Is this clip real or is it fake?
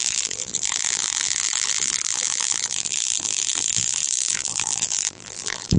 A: fake